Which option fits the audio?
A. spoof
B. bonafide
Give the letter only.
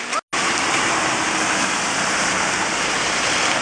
B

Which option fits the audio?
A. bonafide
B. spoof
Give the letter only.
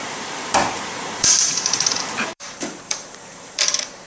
B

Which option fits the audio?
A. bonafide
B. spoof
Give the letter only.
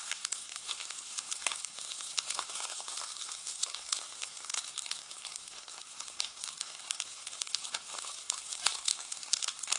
B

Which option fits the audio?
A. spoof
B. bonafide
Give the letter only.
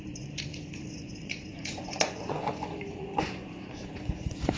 A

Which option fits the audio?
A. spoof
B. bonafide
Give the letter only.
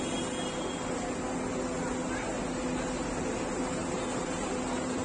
B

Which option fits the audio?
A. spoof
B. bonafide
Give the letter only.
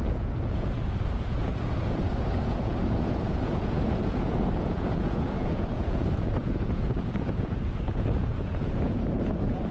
A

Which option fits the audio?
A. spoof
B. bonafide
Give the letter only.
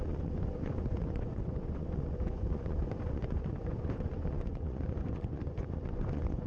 A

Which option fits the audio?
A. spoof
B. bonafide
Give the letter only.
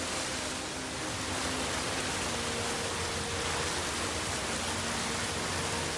B